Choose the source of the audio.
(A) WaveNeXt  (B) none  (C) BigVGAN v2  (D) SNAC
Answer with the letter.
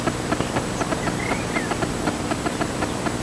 B